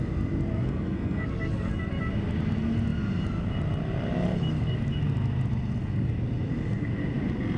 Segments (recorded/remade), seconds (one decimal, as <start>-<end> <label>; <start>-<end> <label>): 0.0-0.5 recorded; 0.5-1.7 remade; 1.7-7.6 recorded